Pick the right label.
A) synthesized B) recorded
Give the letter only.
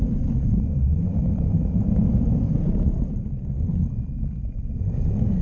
B